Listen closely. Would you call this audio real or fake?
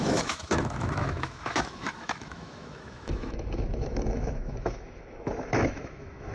fake